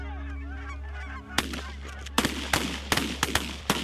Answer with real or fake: real